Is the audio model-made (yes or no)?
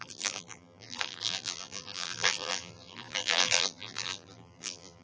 yes